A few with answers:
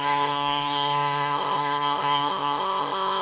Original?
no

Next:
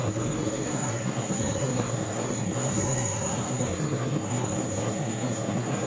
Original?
no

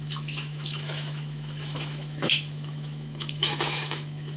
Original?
no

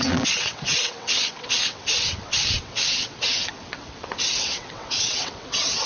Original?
no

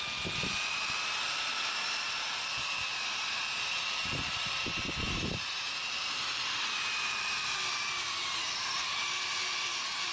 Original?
no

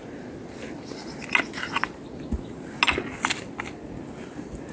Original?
yes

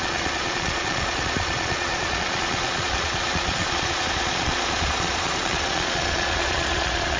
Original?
no